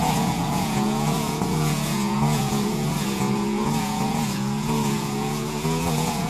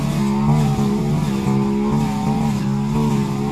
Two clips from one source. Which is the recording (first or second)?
second